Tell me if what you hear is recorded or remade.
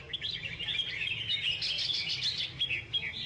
recorded